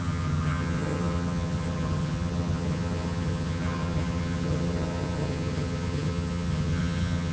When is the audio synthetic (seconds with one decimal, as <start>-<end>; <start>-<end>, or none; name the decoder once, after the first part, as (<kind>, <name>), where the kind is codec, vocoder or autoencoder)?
0.0-7.3 (vocoder, HiFi-GAN)